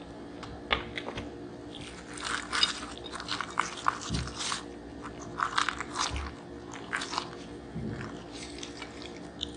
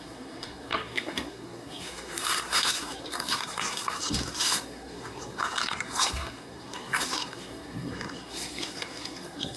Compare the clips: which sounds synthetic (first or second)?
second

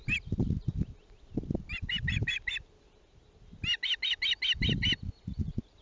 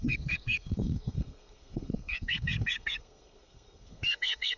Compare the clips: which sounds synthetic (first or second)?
second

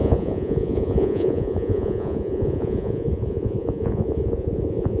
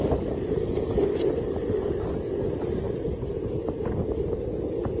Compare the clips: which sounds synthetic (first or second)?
first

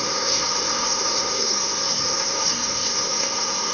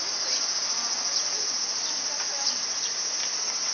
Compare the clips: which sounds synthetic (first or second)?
first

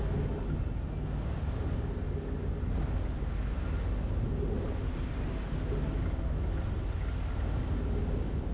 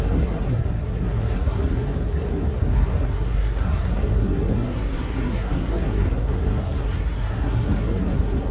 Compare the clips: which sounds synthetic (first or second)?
second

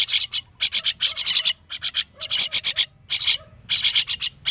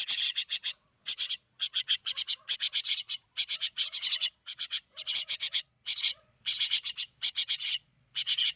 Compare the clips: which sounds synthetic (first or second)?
second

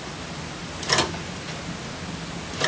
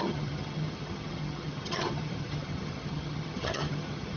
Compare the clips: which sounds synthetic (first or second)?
second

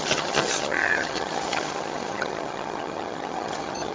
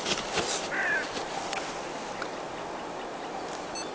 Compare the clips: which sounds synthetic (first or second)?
first